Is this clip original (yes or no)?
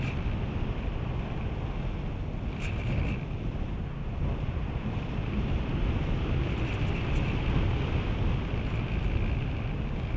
yes